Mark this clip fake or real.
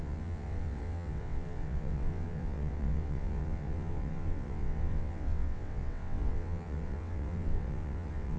fake